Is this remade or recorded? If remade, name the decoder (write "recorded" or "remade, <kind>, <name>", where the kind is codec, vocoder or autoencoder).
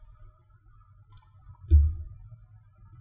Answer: recorded